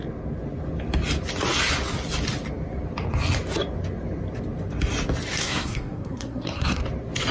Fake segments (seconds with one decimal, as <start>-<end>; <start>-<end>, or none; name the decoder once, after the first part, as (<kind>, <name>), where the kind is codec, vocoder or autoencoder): 5.4-6.8 (codec, SNAC)